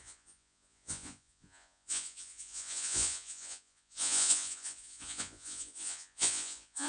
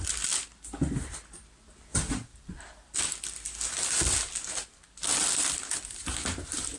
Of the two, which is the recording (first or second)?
second